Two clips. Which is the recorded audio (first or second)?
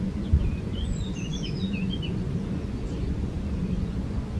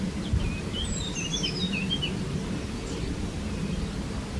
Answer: second